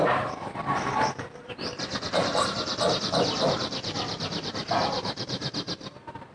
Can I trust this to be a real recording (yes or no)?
no